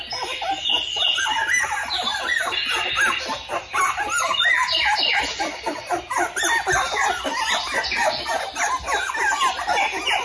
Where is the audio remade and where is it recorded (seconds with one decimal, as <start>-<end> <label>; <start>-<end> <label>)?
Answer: 0.0-10.2 recorded